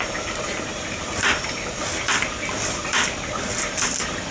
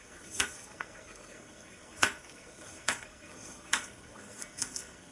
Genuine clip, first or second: first